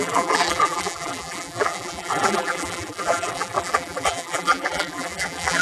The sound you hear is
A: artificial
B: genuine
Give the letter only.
A